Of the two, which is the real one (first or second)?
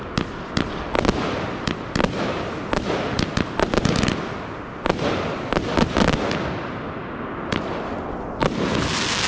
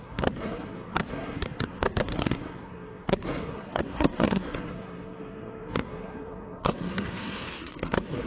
first